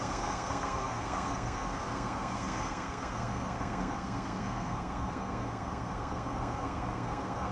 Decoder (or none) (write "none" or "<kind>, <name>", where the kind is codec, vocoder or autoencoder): codec, SNAC